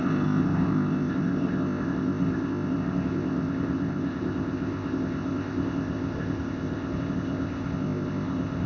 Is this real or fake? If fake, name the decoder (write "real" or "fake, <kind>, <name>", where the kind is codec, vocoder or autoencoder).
fake, codec, ZipCodec